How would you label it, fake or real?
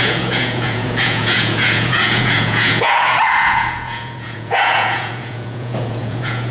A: fake